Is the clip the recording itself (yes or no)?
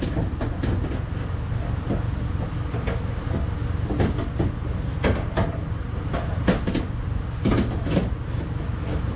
yes